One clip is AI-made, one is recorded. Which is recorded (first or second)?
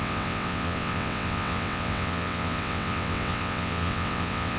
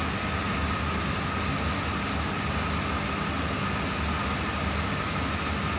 second